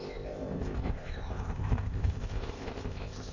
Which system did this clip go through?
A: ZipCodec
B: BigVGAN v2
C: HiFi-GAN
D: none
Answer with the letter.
A